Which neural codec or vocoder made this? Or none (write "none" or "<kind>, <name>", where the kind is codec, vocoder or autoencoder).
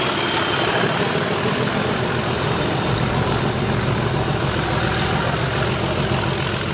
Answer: none